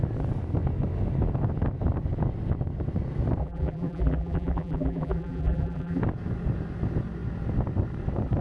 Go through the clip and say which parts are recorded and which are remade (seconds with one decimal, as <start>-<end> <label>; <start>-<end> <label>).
0.0-3.4 recorded; 3.4-6.0 remade; 6.0-8.4 recorded